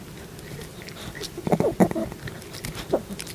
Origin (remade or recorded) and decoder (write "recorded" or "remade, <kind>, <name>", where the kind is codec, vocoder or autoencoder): recorded